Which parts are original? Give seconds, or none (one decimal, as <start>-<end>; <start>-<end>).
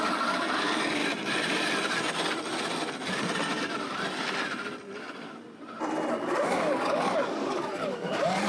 1.0-6.1